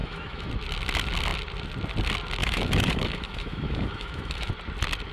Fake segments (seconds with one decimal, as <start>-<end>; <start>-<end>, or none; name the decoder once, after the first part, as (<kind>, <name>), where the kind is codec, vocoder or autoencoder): 0.0-0.5 (autoencoder, DAC-VAE); 2.4-4.5